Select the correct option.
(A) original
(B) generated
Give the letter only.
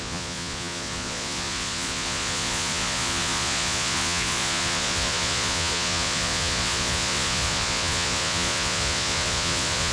B